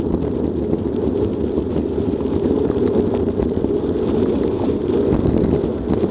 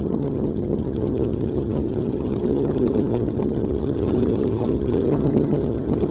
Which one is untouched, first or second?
first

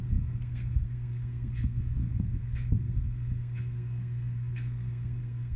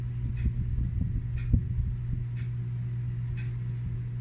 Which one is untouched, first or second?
second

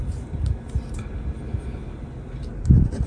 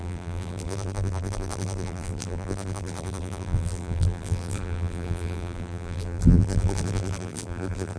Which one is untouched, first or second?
first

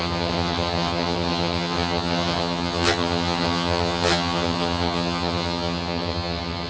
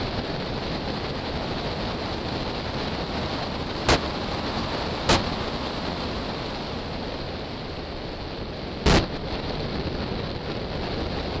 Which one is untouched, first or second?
second